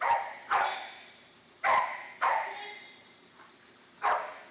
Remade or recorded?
remade